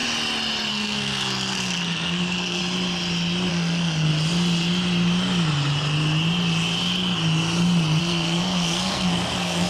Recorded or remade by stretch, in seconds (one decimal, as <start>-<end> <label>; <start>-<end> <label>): 0.0-0.7 recorded; 0.7-2.6 remade; 2.6-3.5 recorded; 3.5-4.1 remade; 4.1-8.0 recorded; 8.0-9.7 remade